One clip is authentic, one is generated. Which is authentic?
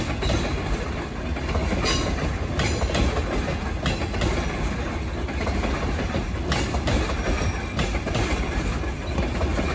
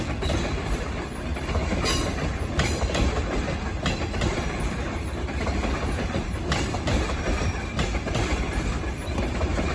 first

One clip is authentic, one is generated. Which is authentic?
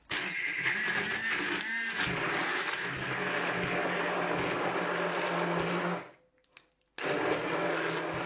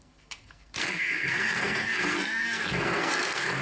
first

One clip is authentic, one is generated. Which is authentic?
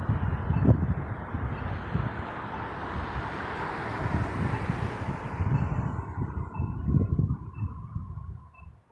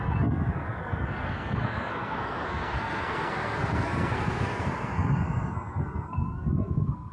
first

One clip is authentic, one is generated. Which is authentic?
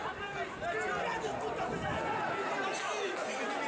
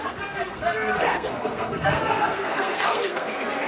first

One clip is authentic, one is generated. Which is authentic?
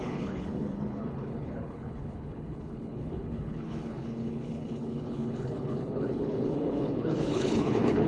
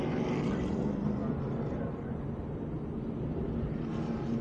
second